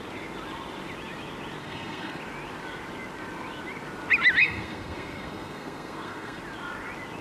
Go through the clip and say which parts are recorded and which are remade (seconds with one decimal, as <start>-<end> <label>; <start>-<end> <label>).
0.0-1.6 recorded; 1.6-2.2 remade; 2.2-4.4 recorded; 4.4-6.4 remade; 6.4-7.2 recorded